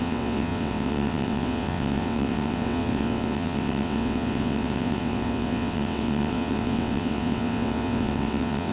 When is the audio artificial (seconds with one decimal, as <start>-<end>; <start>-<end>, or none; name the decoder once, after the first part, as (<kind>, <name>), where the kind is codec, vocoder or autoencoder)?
0.0-8.7 (vocoder, WaveNeXt)